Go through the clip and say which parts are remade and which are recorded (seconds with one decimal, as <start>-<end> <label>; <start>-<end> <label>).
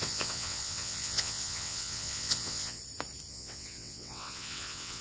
0.0-2.8 remade; 2.8-3.3 recorded; 3.3-5.0 remade